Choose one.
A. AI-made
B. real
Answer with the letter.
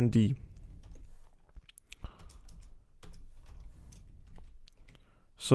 B